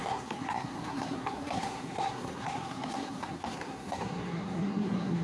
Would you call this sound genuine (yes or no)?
no